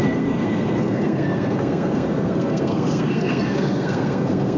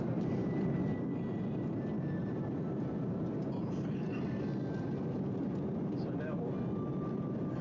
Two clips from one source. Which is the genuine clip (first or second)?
second